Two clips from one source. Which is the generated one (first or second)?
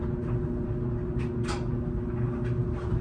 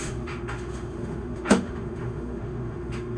second